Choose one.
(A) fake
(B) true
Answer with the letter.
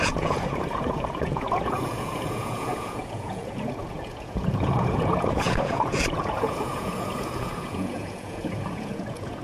A